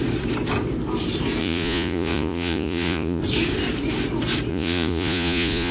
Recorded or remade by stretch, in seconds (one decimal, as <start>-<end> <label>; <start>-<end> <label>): 0.0-1.4 recorded; 1.4-3.2 remade; 3.2-4.5 recorded; 4.5-5.7 remade